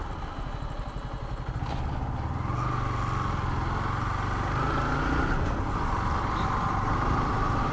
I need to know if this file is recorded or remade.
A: recorded